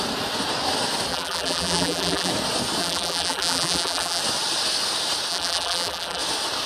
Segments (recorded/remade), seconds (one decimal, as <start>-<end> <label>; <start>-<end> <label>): 0.0-1.1 recorded; 1.1-2.3 remade; 2.3-2.8 recorded; 2.8-4.2 remade; 4.2-5.3 recorded; 5.3-6.2 remade; 6.2-6.7 recorded